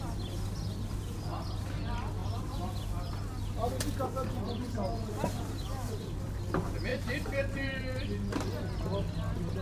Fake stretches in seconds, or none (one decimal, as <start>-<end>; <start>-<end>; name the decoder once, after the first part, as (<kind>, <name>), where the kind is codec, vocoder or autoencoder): 6.9-7.8 (vocoder, BigVGAN v2)